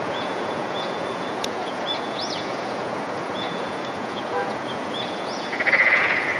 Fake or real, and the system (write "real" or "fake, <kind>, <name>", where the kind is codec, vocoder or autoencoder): fake, vocoder, Vocos